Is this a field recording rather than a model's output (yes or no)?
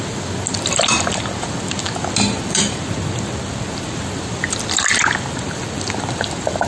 yes